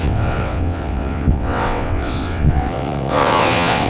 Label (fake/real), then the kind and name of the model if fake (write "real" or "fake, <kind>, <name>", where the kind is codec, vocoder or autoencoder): fake, vocoder, WaveNeXt